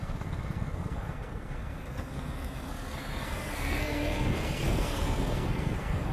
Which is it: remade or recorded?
remade